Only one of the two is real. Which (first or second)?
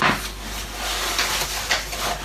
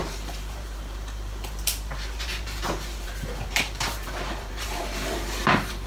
first